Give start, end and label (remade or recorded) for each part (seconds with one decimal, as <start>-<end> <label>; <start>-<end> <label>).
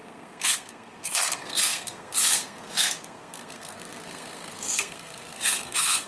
0.0-6.1 remade